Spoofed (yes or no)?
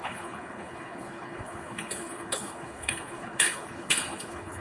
yes